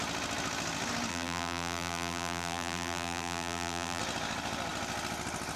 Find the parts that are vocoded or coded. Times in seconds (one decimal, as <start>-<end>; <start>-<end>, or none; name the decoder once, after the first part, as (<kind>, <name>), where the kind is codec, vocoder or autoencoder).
1.1-4.0 (vocoder, BigVGAN v2)